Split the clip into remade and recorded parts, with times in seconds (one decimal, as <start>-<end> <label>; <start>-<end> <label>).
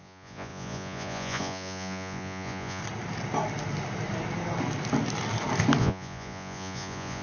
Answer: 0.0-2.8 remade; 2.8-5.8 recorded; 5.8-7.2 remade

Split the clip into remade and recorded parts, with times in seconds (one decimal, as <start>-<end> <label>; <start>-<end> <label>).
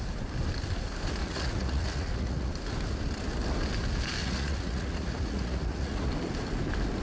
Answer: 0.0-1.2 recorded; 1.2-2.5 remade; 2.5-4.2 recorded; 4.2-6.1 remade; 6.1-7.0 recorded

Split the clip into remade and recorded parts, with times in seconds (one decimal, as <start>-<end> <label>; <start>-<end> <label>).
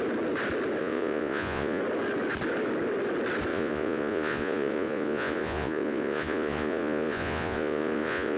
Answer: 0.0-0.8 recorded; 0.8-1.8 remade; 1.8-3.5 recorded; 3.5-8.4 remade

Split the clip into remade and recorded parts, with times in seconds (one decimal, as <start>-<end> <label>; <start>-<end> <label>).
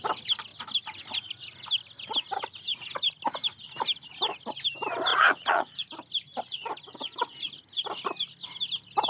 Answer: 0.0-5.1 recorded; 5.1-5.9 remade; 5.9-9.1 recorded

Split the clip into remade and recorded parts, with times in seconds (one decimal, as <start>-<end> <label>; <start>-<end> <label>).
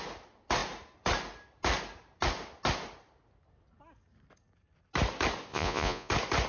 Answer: 0.0-5.5 recorded; 5.5-6.1 remade; 6.1-6.5 recorded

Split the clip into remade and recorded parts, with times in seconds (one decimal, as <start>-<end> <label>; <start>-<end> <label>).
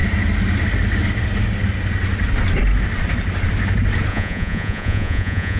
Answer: 0.0-4.1 recorded; 4.1-5.6 remade